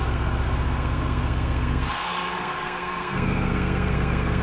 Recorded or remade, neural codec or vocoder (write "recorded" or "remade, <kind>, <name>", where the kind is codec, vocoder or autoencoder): remade, codec, SNAC